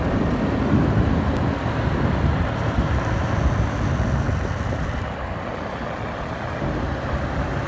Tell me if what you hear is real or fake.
real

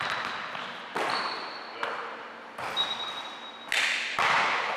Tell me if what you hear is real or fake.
real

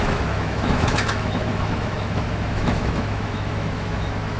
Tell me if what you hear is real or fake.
fake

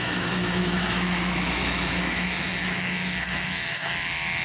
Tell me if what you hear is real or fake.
fake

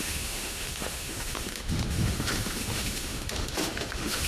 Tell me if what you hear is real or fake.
fake